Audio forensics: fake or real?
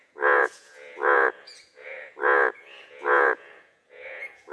fake